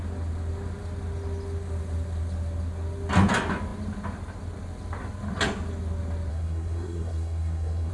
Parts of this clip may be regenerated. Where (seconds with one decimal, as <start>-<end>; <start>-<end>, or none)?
6.3-7.9